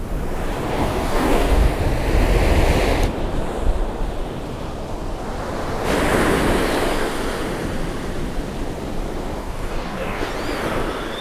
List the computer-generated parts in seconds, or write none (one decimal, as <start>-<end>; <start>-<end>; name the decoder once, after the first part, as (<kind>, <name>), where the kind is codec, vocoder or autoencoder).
0.7-1.7 (codec, DAC); 9.4-10.3